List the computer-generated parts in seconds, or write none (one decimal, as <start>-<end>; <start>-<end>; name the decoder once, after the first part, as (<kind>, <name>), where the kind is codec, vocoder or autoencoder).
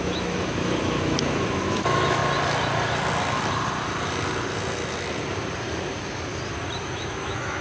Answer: 0.0-2.2 (autoencoder, DAC-VAE); 6.8-7.6